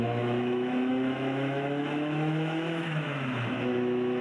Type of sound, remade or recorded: remade